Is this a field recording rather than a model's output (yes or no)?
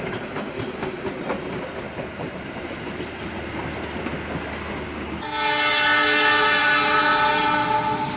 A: yes